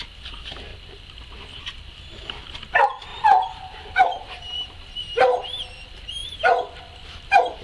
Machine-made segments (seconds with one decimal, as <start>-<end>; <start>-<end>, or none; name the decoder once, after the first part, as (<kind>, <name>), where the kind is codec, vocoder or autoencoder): 3.1-5.0 (vocoder, BigVGAN v2)